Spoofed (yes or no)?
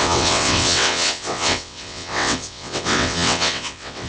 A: yes